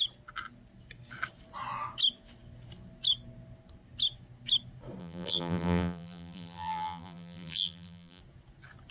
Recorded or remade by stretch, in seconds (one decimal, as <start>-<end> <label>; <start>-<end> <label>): 0.0-5.0 recorded; 5.0-8.2 remade; 8.2-8.9 recorded